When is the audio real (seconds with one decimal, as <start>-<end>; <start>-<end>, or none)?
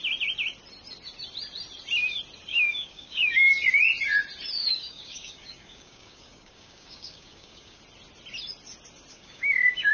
0.0-2.5; 3.5-4.6; 7.8-9.1